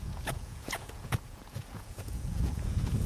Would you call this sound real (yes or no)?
no